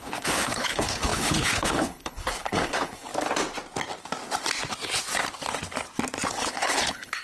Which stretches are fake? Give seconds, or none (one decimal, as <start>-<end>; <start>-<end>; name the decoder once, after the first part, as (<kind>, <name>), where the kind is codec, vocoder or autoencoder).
0.0-3.1 (codec, HILCodec); 6.3-7.2